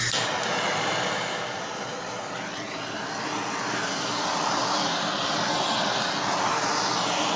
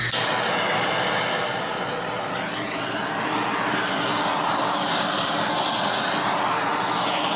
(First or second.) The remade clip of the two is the first